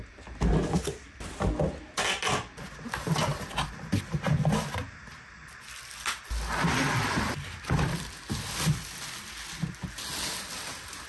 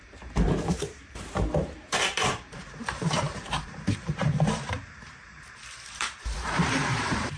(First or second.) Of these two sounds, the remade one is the second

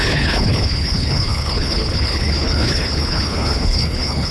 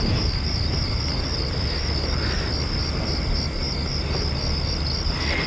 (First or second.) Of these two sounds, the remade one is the first